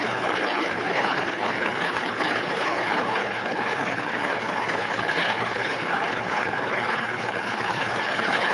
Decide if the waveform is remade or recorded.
remade